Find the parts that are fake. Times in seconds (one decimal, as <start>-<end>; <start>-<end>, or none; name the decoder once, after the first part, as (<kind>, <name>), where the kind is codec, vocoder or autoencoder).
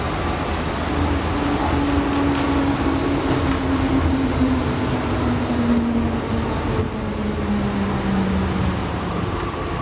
8.8-9.8 (vocoder, BigVGAN v2)